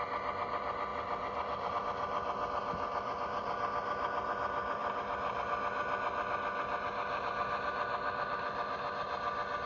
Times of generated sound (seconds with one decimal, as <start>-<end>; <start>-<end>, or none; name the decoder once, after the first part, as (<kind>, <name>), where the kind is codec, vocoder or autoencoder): none